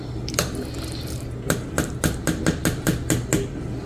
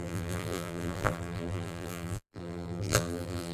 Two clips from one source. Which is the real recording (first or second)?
first